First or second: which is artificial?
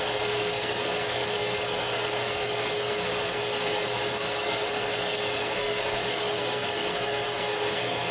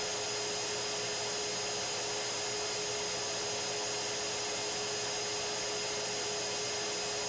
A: first